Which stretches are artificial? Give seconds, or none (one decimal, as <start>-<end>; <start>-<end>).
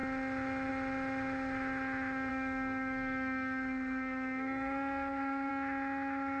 2.3-5.5